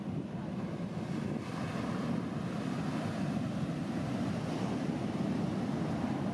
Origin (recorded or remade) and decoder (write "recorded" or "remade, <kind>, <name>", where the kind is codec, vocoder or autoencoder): recorded